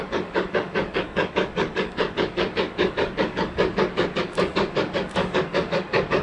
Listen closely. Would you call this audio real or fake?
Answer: fake